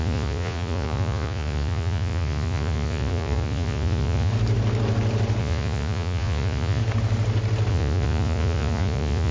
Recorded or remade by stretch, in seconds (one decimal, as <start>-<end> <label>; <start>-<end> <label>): 0.0-4.3 remade; 4.3-5.4 recorded; 5.4-6.8 remade; 6.8-7.7 recorded; 7.7-9.3 remade